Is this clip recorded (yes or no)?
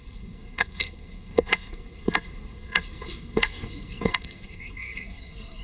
no